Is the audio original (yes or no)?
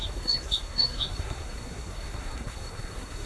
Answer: no